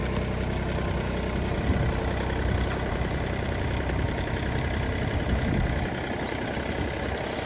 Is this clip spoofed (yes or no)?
no